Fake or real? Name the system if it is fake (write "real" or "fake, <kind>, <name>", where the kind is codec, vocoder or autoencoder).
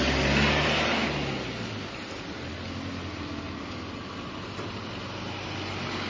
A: real